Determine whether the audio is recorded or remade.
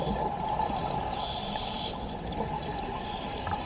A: recorded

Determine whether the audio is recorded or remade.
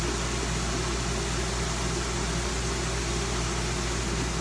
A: recorded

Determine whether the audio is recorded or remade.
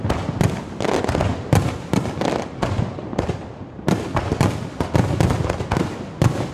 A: recorded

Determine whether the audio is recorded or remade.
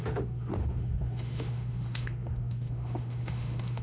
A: remade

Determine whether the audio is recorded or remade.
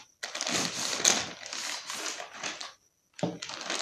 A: recorded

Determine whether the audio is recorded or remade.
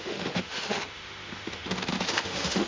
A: remade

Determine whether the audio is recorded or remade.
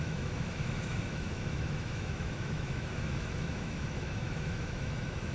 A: remade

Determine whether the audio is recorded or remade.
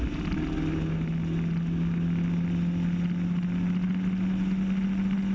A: recorded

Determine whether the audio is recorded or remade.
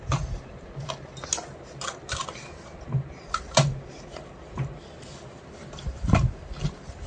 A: recorded